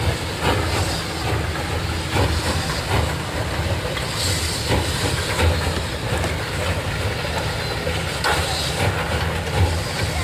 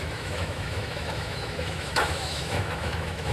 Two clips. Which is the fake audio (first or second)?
second